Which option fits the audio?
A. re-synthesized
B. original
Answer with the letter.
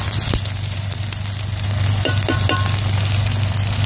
B